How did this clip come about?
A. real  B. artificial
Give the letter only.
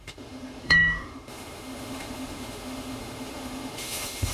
B